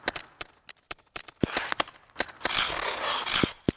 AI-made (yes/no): no